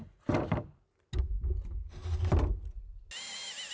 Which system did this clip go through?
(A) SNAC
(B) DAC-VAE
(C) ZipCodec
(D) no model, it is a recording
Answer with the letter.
D